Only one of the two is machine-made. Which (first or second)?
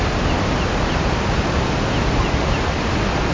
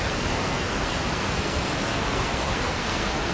second